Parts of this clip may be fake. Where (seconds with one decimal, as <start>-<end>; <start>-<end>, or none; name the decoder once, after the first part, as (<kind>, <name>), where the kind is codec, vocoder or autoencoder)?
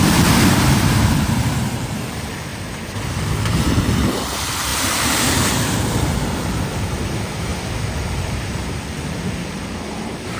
0.0-10.4 (vocoder, BigVGAN v2)